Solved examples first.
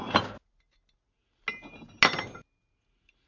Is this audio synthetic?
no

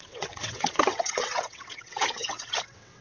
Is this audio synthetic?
yes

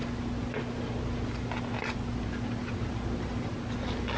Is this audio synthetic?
no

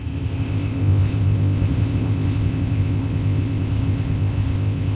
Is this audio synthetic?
yes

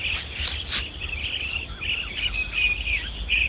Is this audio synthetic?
no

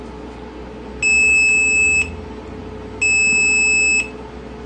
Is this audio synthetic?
no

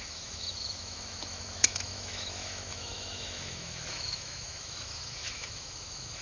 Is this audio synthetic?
yes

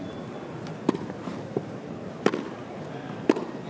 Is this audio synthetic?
no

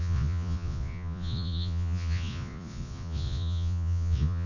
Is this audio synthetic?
yes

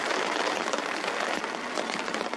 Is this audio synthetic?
no